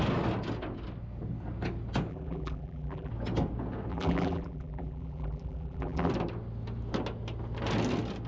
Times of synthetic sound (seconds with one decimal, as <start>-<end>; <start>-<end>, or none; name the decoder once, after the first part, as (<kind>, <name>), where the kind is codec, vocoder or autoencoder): 2.1-3.1 (vocoder, BigVGAN v2); 3.9-6.1